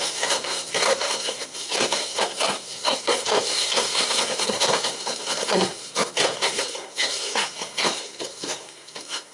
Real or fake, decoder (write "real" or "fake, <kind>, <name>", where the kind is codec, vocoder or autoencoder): fake, codec, SNAC